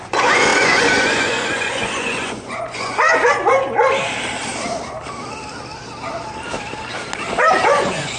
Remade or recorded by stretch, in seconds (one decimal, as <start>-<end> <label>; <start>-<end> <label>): 0.0-3.1 remade; 3.1-7.6 recorded; 7.6-8.2 remade

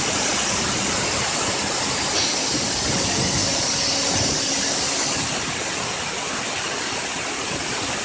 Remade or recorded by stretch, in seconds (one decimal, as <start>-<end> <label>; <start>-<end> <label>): 0.0-8.0 recorded

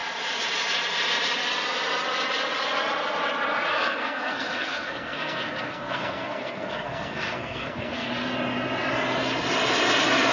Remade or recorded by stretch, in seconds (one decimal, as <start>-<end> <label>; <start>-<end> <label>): 0.0-3.7 recorded; 3.7-8.1 remade; 8.1-10.3 recorded

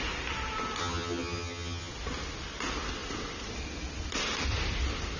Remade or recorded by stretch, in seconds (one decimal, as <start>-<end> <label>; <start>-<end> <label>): 0.0-0.8 recorded; 0.8-1.9 remade; 1.9-5.2 recorded

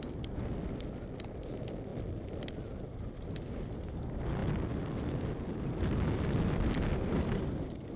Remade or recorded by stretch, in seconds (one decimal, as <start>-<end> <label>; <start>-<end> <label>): 0.0-8.0 recorded

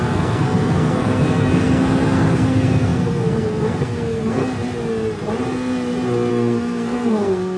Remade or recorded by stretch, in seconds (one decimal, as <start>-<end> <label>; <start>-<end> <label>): 0.0-4.4 remade; 4.4-6.3 recorded; 6.3-7.6 remade

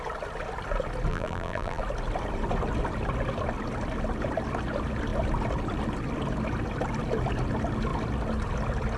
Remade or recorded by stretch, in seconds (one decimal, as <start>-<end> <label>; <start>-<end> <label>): 0.0-1.1 recorded; 1.1-1.8 remade; 1.8-9.0 recorded